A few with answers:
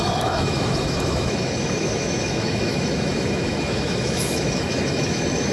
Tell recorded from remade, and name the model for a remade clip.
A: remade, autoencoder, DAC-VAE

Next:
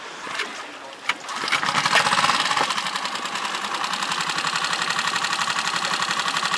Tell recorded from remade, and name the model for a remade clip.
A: recorded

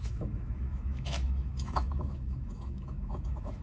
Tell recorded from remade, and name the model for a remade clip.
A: remade, autoencoder, DAC-VAE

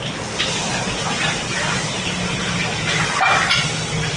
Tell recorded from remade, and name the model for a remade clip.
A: recorded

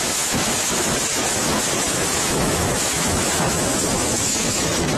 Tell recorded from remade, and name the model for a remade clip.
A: remade, autoencoder, DAC-VAE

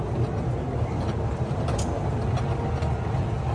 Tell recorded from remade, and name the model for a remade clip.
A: recorded